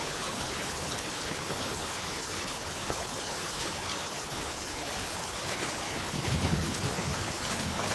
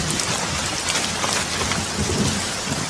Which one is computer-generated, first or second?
first